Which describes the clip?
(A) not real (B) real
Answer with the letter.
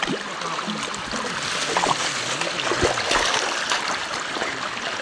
B